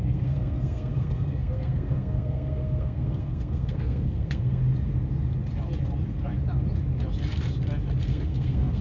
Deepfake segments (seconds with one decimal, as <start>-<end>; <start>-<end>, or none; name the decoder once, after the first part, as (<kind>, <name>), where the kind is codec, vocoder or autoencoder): 0.0-4.6 (codec, SNAC); 8.0-8.8